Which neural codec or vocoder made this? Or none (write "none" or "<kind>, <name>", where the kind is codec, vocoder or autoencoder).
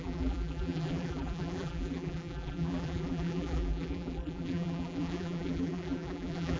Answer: vocoder, BigVGAN v2